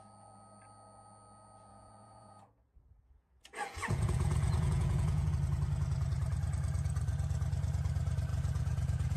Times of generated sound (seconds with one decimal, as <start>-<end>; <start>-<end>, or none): 1.7-5.3; 8.3-9.2